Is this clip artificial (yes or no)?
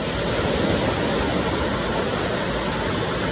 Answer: no